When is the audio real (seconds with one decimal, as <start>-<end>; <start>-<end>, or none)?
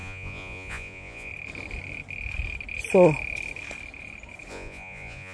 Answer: 1.3-4.5